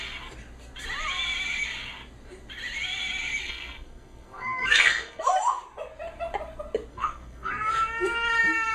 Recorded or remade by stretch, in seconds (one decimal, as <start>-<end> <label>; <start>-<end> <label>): 0.0-3.4 recorded; 3.4-5.2 remade; 5.2-6.9 recorded; 6.9-7.7 remade; 7.7-8.7 recorded